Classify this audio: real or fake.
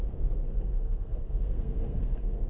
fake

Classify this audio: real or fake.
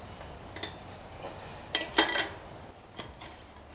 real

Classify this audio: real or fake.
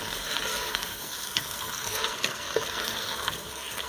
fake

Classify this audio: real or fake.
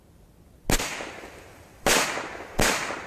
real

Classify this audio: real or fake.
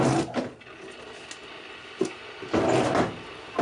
real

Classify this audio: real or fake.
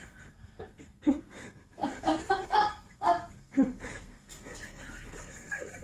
fake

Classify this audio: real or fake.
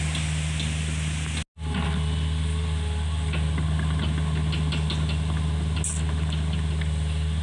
real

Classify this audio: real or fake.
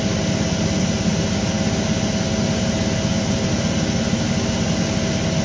real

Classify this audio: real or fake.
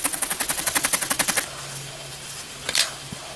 real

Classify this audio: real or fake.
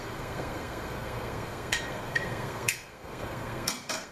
fake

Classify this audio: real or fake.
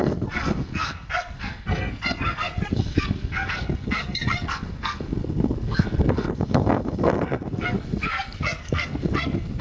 fake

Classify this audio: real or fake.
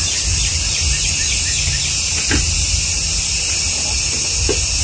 real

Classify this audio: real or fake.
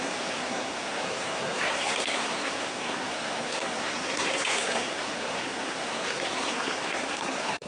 fake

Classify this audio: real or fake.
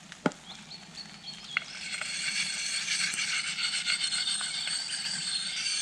real